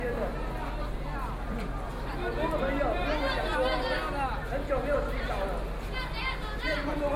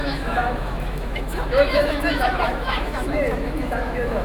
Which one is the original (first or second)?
first